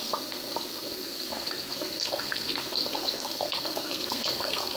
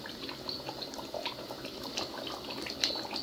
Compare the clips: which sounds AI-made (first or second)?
first